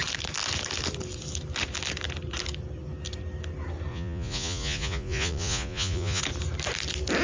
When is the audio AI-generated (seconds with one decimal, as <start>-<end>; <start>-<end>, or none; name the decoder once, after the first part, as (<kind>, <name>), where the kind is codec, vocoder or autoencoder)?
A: 3.9-6.2 (vocoder, Vocos)